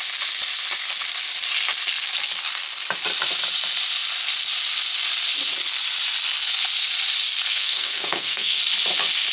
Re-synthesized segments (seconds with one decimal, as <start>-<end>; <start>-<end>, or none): 7.5-8.6